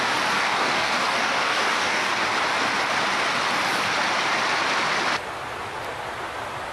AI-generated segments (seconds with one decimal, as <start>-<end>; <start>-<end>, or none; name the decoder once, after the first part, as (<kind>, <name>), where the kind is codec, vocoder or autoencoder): 0.4-2.2 (codec, DAC)